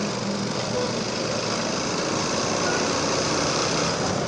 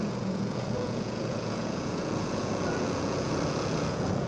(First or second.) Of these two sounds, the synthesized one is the second